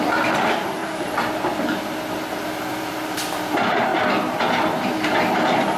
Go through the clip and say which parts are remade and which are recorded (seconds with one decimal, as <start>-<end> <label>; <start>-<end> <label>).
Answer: 0.0-0.8 remade; 0.8-2.7 recorded; 2.7-3.9 remade; 3.9-5.8 recorded